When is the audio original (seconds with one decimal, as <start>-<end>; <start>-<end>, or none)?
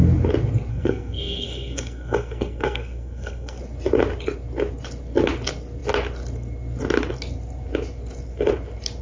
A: 0.0-0.7; 3.6-9.0